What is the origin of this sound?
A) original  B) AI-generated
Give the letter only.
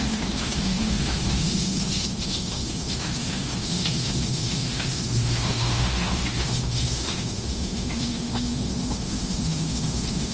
B